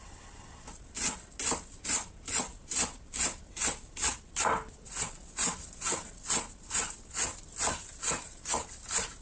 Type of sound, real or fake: fake